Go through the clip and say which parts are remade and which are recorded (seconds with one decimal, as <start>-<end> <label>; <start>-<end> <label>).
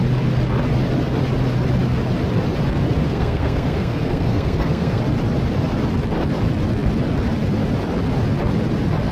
0.0-3.0 recorded; 3.0-5.0 remade; 5.0-9.1 recorded